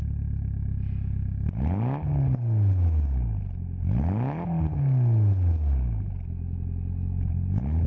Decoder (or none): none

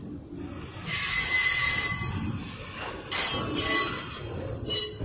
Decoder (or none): none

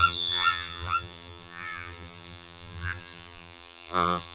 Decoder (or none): vocoder, BigVGAN v2